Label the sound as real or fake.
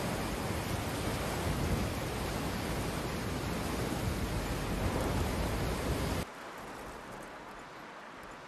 real